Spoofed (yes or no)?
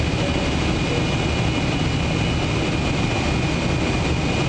no